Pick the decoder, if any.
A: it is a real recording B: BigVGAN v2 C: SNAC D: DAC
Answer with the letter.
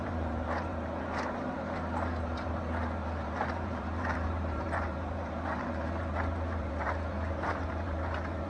B